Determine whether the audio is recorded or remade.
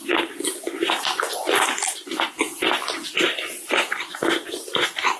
recorded